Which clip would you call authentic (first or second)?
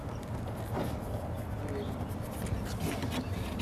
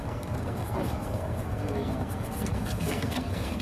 first